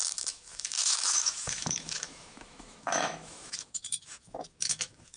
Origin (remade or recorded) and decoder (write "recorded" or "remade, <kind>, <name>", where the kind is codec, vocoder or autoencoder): remade, autoencoder, DAC-VAE